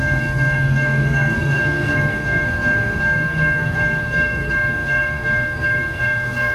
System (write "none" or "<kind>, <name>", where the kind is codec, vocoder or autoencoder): codec, SNAC